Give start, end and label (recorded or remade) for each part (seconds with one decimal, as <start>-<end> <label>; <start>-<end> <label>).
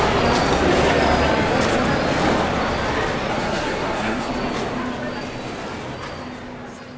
0.0-3.3 recorded; 3.3-4.3 remade; 4.3-7.0 recorded